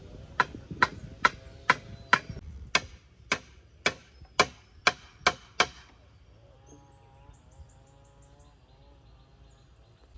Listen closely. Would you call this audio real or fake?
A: real